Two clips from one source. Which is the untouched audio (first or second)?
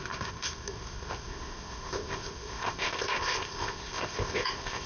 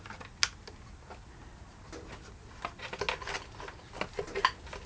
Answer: second